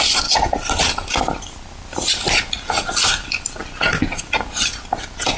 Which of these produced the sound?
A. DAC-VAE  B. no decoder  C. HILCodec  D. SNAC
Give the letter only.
B